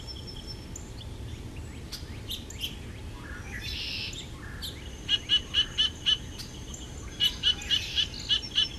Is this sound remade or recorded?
recorded